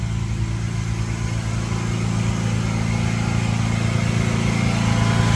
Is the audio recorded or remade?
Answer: recorded